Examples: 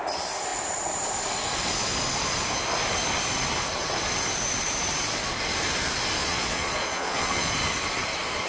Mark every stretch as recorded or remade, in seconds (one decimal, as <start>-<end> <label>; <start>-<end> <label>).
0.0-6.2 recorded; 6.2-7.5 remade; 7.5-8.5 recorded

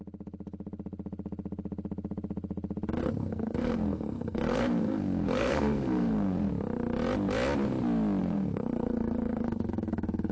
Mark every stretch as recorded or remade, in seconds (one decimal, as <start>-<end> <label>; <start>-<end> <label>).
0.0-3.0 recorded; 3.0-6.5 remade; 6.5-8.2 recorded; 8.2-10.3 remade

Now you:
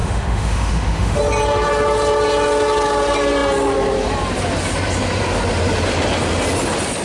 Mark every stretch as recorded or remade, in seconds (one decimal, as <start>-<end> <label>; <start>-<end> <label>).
0.0-1.2 remade; 1.2-7.0 recorded